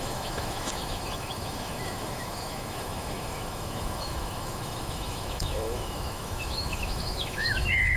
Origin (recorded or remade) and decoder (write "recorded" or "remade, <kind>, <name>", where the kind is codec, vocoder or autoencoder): remade, autoencoder, DAC-VAE